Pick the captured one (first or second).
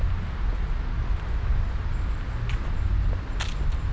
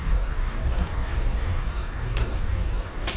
first